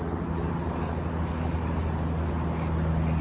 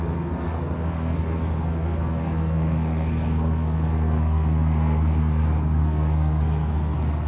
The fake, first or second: second